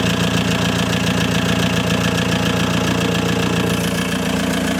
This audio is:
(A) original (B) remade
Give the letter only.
A